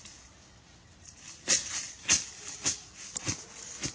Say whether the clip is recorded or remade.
recorded